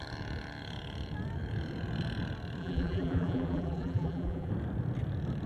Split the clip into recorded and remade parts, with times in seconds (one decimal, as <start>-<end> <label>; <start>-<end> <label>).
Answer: 0.0-2.6 recorded; 2.6-4.5 remade; 4.5-5.5 recorded